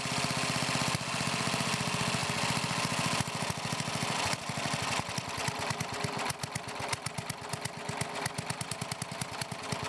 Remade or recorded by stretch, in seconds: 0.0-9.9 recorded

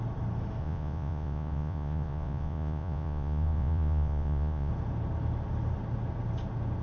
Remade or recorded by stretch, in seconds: 0.0-0.6 recorded; 0.6-4.7 remade; 4.7-6.8 recorded

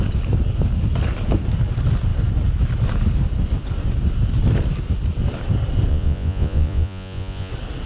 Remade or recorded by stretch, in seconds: 0.0-5.9 recorded; 5.9-7.5 remade; 7.5-7.9 recorded

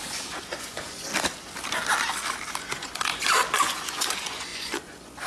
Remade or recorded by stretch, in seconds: 0.0-1.1 remade; 1.1-2.6 recorded; 2.6-3.1 remade; 3.1-3.6 recorded; 3.6-5.3 remade

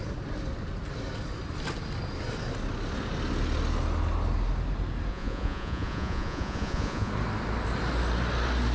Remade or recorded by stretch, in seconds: 0.0-5.1 recorded; 5.1-7.1 remade; 7.1-8.7 recorded

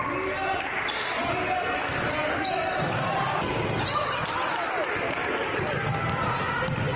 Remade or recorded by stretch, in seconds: 0.0-7.0 recorded

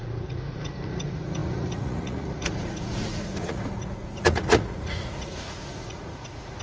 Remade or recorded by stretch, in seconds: 0.0-6.6 remade

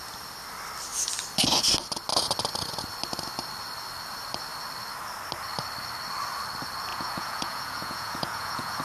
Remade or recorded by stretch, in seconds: 0.0-6.9 recorded; 6.9-8.8 remade